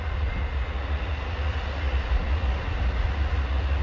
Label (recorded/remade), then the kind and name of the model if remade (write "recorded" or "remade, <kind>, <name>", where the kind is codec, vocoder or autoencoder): remade, vocoder, Vocos